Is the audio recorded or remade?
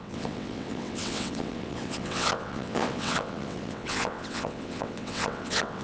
remade